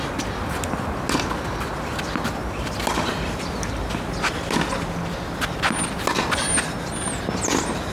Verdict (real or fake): real